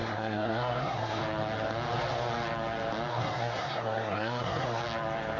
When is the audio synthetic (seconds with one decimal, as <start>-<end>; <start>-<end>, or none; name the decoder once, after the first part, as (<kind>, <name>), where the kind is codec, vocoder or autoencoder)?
0.0-1.2 (codec, SNAC); 3.1-4.8